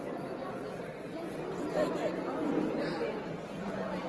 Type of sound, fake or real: real